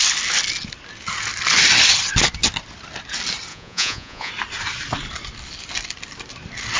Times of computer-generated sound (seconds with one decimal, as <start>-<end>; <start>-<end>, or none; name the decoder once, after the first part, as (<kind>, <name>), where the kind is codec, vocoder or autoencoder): 3.5-4.3 (vocoder, Vocos)